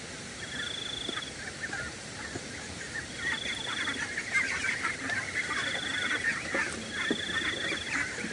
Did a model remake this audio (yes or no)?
no